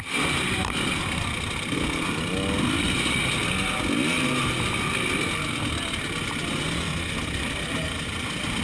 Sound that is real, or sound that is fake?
real